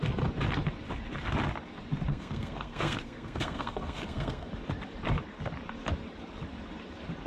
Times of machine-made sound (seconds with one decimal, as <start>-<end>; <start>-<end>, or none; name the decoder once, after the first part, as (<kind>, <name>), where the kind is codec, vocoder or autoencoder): 2.1-4.5 (codec, SNAC)